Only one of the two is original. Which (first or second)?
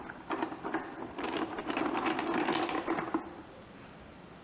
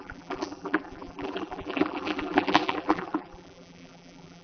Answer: first